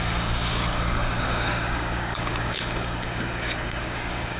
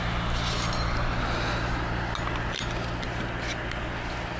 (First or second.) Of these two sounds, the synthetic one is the first